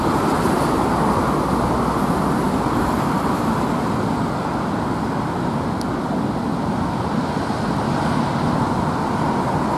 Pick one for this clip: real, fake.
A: real